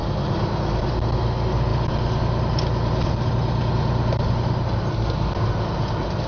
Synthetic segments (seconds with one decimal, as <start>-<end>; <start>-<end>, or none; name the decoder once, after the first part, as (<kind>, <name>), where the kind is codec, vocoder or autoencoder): none